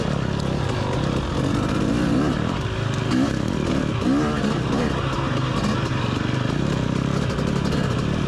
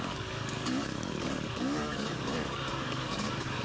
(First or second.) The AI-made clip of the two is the second